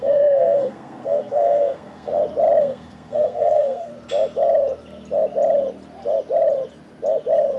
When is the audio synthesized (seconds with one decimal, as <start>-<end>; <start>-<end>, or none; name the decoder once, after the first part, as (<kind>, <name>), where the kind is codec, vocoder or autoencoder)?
0.0-2.1 (codec, SNAC); 2.6-3.9